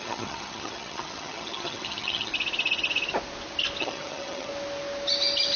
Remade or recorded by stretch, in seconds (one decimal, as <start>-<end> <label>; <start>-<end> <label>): 0.0-2.3 remade; 2.3-3.8 recorded; 3.8-4.5 remade; 4.5-5.6 recorded